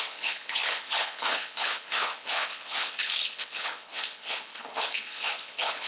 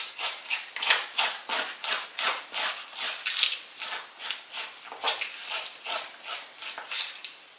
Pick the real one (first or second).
second